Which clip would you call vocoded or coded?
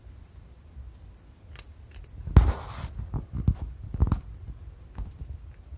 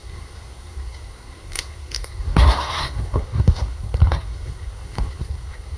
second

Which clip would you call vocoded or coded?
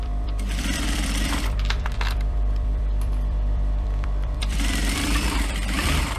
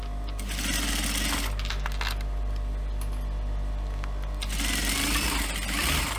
first